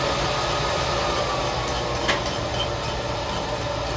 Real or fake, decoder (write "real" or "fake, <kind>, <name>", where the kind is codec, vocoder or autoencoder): real